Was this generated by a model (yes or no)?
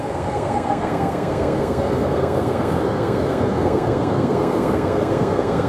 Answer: yes